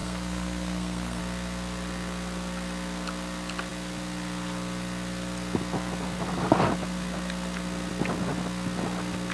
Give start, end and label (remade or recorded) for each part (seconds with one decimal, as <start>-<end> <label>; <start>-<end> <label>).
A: 0.0-1.2 remade; 1.2-9.3 recorded